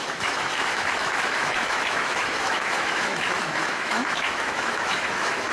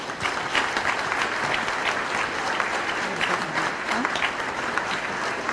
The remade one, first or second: first